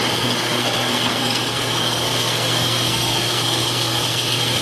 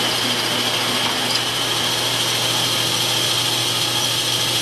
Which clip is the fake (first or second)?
first